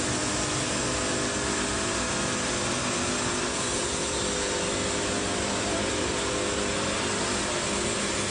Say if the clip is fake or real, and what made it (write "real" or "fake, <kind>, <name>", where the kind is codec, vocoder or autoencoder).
real